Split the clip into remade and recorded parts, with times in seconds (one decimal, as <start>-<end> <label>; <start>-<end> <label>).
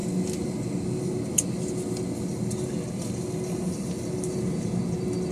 0.0-5.3 recorded